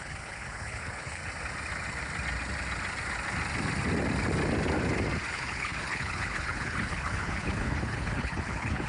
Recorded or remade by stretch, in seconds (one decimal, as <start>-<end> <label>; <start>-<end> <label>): 0.0-1.2 remade; 1.2-5.3 recorded; 5.3-8.9 remade